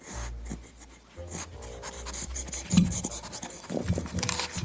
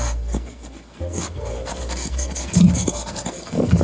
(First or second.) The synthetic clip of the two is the second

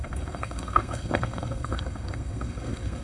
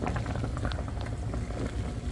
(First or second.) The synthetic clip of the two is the first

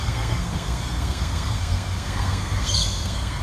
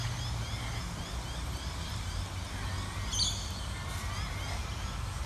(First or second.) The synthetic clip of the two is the first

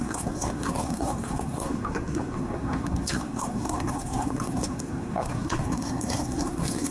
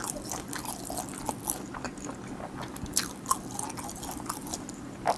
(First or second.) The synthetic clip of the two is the first